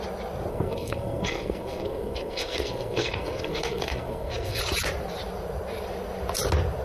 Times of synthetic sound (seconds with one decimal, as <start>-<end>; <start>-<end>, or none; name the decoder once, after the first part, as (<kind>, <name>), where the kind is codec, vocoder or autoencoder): 0.5-4.6 (codec, SNAC)